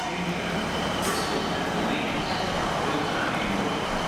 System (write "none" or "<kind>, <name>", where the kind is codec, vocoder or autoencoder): none